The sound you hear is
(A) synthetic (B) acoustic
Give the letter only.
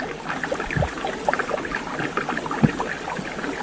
B